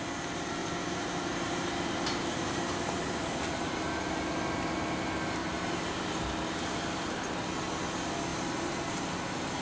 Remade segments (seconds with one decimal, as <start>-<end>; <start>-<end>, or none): 0.6-4.3; 5.4-6.1; 8.3-9.1